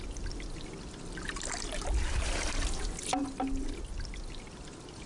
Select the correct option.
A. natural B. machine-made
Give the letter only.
A